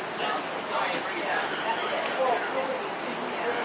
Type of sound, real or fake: real